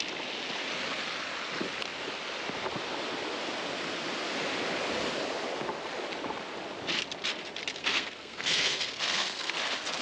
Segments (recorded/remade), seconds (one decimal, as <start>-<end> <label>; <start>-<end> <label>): 0.0-7.8 recorded; 7.8-9.5 remade; 9.5-10.0 recorded